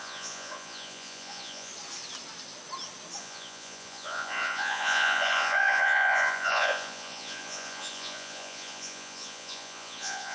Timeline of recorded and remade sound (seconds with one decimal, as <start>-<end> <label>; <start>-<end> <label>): 0.0-1.7 remade; 1.7-3.2 recorded; 3.2-10.3 remade